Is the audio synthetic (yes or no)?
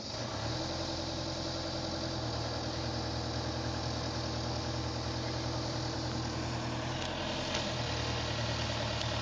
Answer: no